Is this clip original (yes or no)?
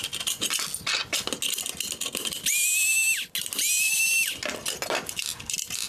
yes